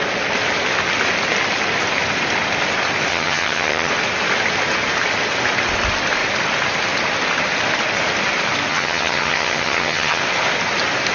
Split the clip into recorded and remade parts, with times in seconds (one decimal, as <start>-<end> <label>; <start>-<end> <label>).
0.0-3.1 recorded; 3.1-3.9 remade; 3.9-8.7 recorded; 8.7-10.2 remade; 10.2-11.1 recorded

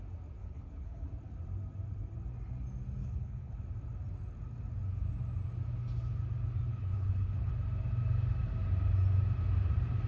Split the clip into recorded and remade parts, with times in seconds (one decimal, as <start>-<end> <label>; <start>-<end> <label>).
0.0-0.4 recorded; 0.4-1.1 remade; 1.1-3.0 recorded; 3.0-3.6 remade; 3.6-6.7 recorded; 6.7-7.5 remade; 7.5-10.1 recorded

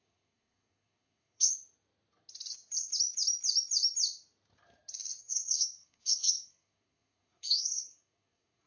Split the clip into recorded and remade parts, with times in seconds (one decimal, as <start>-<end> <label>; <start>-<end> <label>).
0.0-1.5 remade; 1.5-5.2 recorded; 5.2-8.7 remade

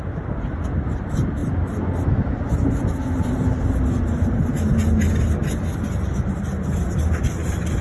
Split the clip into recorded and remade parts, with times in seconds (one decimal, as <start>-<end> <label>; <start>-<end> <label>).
0.0-7.8 recorded

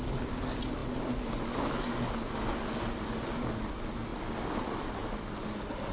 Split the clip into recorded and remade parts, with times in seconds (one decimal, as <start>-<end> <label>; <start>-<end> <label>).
0.0-5.9 recorded

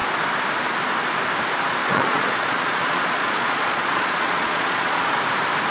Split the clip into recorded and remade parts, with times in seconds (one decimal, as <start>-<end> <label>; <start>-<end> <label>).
0.0-1.8 recorded; 1.8-5.2 remade; 5.2-5.7 recorded

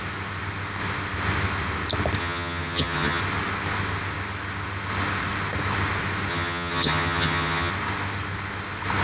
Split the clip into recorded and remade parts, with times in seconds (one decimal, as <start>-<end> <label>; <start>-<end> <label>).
0.0-2.2 recorded; 2.2-3.2 remade; 3.2-6.3 recorded; 6.3-7.7 remade; 7.7-9.0 recorded